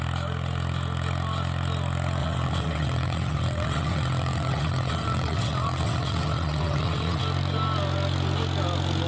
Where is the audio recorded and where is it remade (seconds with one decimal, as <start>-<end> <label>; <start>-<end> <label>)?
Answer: 0.0-2.2 recorded; 2.2-7.2 remade; 7.2-9.1 recorded